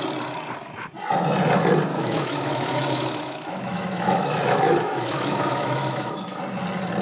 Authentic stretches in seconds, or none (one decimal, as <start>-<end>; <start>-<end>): 0.0-1.9; 6.1-7.0